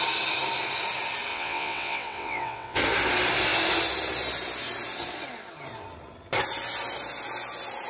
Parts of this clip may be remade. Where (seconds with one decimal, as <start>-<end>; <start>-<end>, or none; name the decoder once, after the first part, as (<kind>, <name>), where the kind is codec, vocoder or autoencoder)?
1.3-2.8 (vocoder, WaveNeXt)